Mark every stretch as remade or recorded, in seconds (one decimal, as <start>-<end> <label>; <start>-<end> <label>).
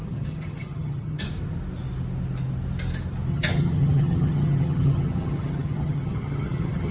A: 0.0-1.2 remade; 1.2-3.3 recorded; 3.3-6.9 remade